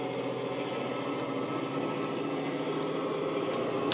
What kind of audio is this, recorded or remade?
recorded